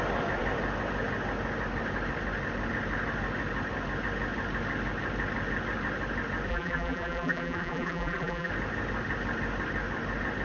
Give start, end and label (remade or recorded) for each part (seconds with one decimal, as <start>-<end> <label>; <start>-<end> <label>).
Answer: 0.0-6.5 recorded; 6.5-8.5 remade; 8.5-10.4 recorded